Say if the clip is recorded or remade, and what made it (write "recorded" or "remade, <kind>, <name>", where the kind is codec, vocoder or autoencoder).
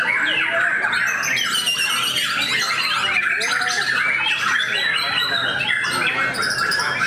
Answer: recorded